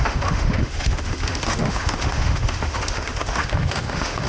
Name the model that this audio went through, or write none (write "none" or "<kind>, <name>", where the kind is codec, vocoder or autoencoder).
autoencoder, DAC-VAE